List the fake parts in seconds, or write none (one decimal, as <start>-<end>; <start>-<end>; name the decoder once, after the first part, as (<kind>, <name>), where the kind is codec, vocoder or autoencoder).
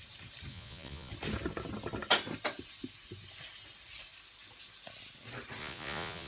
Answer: 0.5-1.1 (vocoder, Vocos); 5.6-6.3